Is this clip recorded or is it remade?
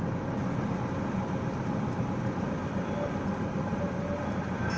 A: recorded